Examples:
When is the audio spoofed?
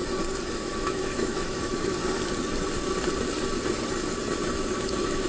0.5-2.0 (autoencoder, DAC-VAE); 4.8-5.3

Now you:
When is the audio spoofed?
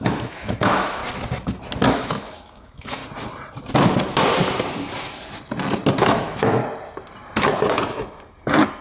0.0-1.0 (autoencoder, DAC-VAE); 1.9-3.0; 6.0-6.6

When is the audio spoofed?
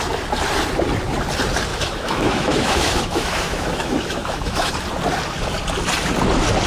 1.7-4.7 (autoencoder, DAC-VAE)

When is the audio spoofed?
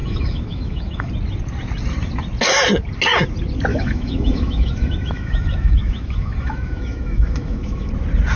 0.0-1.1 (autoencoder, DAC-VAE); 3.7-7.9